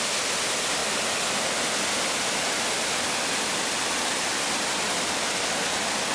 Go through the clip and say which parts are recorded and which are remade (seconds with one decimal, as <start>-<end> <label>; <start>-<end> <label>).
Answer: 0.0-6.1 recorded